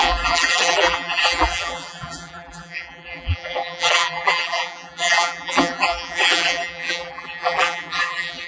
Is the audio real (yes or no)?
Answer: no